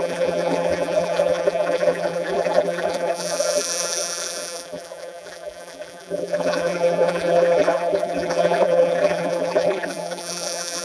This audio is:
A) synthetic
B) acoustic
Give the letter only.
A